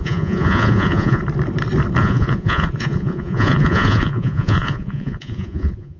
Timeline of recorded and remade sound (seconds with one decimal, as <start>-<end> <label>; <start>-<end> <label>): 0.0-1.2 remade; 1.2-2.0 recorded; 2.0-6.0 remade